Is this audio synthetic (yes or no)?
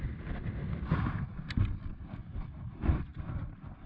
no